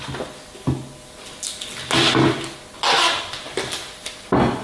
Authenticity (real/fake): real